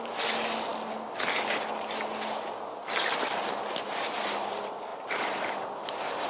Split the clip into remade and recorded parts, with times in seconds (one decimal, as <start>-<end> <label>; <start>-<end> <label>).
0.0-6.3 recorded